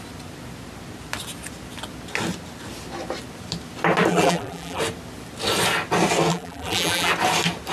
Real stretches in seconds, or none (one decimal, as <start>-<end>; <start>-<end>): 0.0-4.1; 4.8-6.3; 7.1-7.7